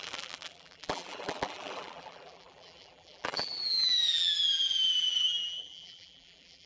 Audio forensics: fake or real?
fake